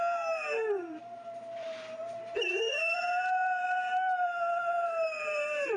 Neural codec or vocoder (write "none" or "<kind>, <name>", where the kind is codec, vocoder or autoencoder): vocoder, BigVGAN v2